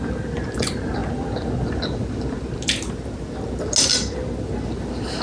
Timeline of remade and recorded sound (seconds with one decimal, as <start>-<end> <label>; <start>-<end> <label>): 0.0-5.2 recorded